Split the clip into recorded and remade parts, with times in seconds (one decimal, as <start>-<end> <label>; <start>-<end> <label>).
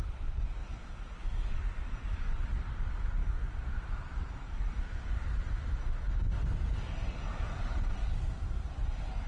0.0-9.3 recorded